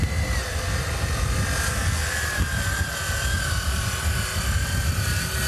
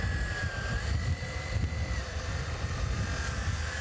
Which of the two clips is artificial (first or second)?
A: second